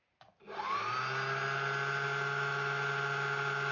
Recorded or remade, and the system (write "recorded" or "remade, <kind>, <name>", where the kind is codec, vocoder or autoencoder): recorded